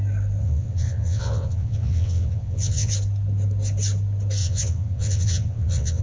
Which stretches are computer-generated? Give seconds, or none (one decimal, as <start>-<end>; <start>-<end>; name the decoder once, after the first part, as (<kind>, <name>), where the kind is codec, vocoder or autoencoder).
0.4-2.9 (vocoder, WaveNeXt); 4.4-6.0